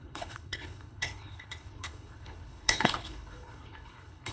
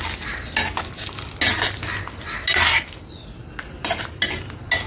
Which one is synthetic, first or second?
first